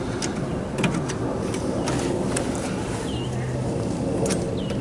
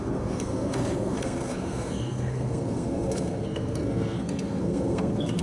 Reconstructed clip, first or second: second